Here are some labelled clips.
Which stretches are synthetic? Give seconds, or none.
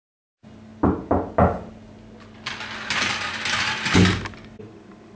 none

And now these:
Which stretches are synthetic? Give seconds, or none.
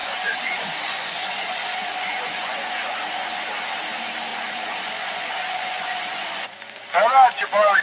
0.0-3.3 (vocoder, Vocos); 4.3-6.9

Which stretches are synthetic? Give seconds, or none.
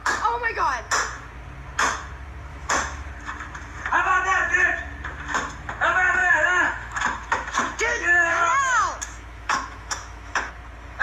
2.5-3.1 (autoencoder, DAC-VAE); 6.2-10.5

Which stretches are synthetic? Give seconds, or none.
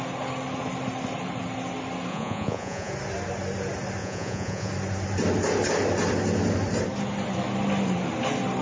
2.1-2.9 (vocoder, Vocos); 4.0-4.7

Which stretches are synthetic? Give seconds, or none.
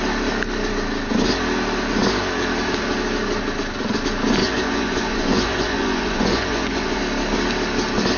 4.4-7.0 (vocoder, Vocos)